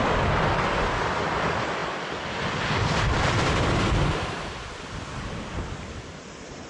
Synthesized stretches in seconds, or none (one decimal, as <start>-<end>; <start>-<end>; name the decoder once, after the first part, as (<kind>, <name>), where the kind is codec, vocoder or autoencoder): none